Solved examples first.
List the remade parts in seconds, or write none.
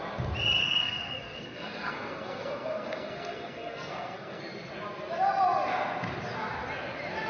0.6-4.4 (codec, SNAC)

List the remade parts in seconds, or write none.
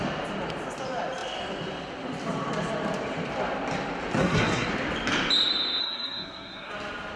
4.2-4.7 (codec, SNAC); 5.8-6.7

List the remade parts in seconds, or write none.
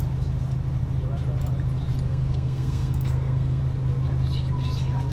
2.1-3.6 (codec, SNAC)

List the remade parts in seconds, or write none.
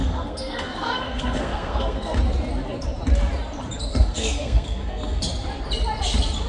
0.0-2.2 (codec, SNAC); 3.9-5.2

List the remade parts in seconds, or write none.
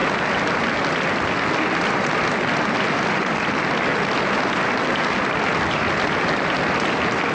none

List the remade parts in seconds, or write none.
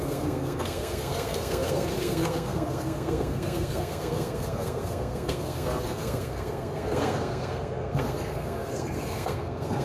0.0-9.8 (codec, SNAC)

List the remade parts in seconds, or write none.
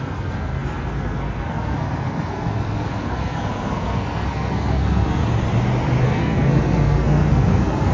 0.0-5.2 (codec, SNAC); 6.0-7.9